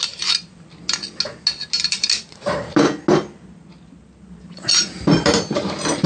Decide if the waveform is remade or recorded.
recorded